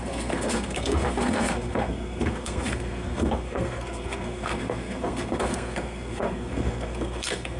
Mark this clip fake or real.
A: fake